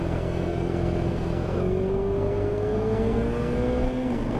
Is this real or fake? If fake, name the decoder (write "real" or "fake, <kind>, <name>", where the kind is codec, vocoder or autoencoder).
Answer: fake, codec, SNAC